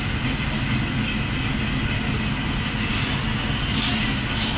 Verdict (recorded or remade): recorded